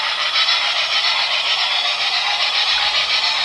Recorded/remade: recorded